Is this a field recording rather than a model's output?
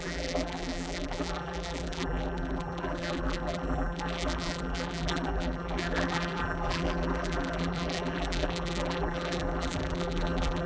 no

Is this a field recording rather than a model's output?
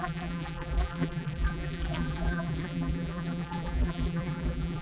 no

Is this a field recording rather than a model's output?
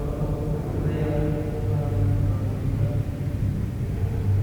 yes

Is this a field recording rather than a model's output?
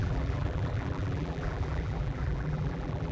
no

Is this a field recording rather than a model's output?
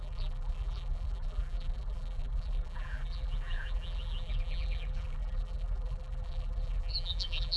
no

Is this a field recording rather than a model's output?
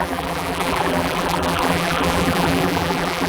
no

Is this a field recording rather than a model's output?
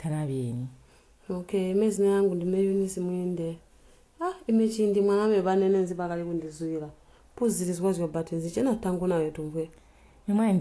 yes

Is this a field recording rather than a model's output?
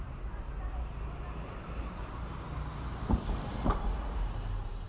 no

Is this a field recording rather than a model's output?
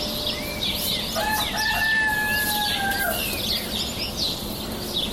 yes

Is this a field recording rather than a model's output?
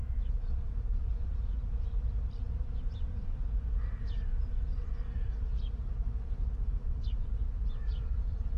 no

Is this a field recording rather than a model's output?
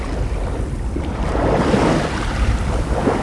yes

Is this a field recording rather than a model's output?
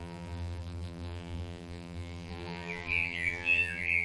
no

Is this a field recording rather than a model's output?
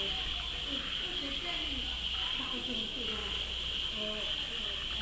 yes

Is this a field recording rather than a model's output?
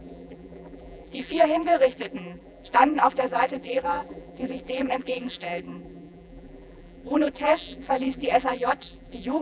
no